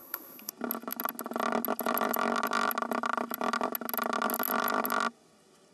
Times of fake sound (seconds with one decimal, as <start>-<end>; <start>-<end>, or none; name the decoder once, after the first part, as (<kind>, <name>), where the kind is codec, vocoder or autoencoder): 0.0-0.5 (codec, SNAC)